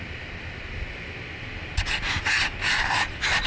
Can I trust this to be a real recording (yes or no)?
yes